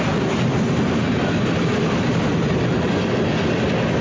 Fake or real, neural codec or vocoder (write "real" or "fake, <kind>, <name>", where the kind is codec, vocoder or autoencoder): real